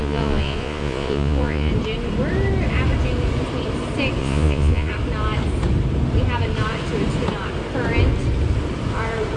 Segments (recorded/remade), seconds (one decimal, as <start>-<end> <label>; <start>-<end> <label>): 0.0-1.7 remade; 1.7-4.2 recorded; 4.2-4.9 remade; 4.9-9.4 recorded